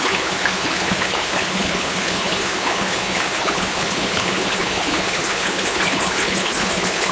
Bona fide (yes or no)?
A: no